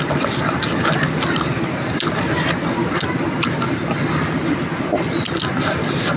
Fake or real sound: real